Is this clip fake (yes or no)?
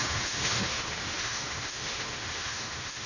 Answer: yes